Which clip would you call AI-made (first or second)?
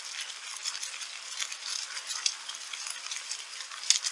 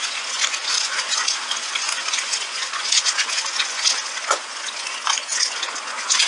second